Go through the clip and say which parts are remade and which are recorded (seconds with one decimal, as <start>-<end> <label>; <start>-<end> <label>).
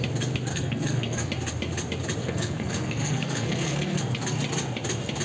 0.0-0.5 recorded; 0.5-1.3 remade; 1.3-2.2 recorded; 2.2-4.2 remade; 4.2-5.2 recorded